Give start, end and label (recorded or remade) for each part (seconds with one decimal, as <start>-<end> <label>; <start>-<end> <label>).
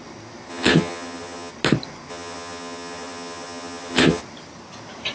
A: 0.0-0.5 recorded; 0.5-1.5 remade; 1.5-2.1 recorded; 2.1-4.2 remade; 4.2-5.1 recorded